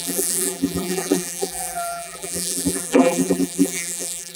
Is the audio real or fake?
fake